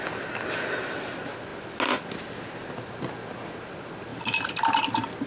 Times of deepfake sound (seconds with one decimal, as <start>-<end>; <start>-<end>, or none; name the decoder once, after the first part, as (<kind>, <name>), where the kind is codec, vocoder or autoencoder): none